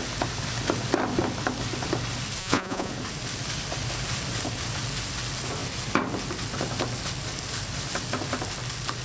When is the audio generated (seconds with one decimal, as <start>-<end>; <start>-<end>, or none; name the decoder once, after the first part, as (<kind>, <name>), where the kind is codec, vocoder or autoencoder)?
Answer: 2.4-2.9 (vocoder, Vocos)